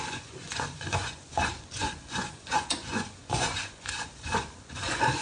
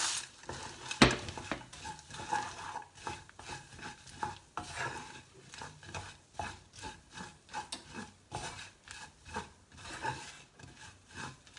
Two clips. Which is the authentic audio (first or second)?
second